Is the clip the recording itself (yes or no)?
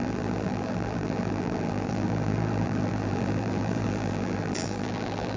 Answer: no